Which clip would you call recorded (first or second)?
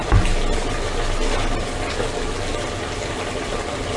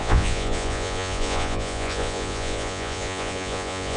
first